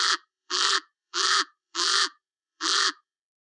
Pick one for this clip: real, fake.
fake